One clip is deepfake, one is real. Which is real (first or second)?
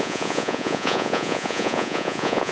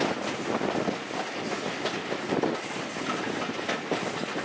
second